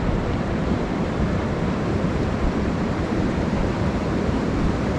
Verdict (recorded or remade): remade